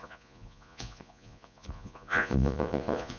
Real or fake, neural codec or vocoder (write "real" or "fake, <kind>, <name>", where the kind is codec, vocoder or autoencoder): fake, vocoder, Vocos